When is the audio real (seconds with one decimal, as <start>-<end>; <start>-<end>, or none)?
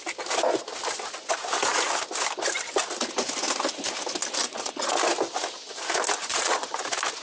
0.0-4.4; 4.9-6.2; 6.8-7.2